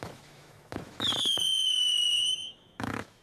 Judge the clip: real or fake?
fake